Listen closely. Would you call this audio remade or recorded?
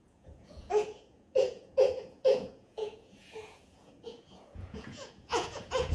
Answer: remade